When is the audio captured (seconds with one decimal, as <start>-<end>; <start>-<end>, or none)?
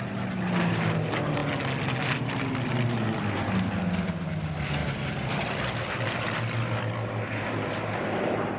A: 0.0-4.8; 6.3-8.6